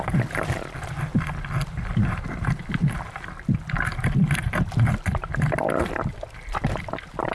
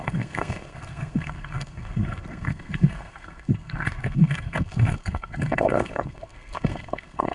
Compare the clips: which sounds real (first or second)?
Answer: first